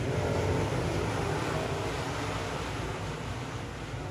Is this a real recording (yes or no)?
yes